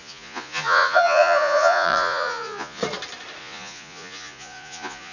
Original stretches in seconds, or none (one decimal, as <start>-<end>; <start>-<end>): 2.8-3.4